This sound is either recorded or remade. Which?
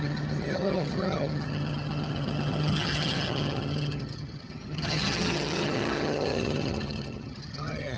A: remade